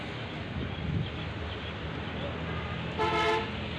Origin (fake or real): real